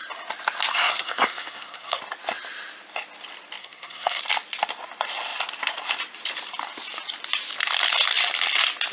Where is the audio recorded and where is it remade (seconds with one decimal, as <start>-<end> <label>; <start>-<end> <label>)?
0.0-0.7 recorded; 0.7-2.0 remade; 2.0-3.6 recorded; 3.6-4.2 remade; 4.2-8.9 recorded